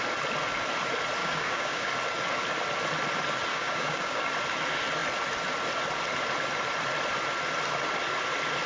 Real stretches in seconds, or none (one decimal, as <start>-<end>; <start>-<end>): 0.0-1.2; 1.9-3.5; 4.3-8.7